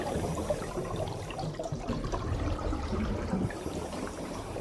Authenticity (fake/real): fake